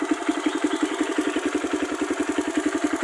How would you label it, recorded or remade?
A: recorded